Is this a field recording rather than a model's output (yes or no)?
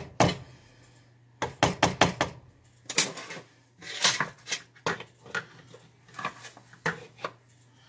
yes